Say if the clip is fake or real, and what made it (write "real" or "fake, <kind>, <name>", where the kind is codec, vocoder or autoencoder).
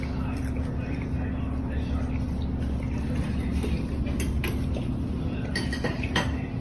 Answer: real